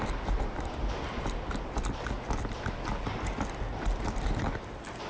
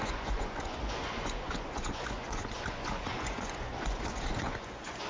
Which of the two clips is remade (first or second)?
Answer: second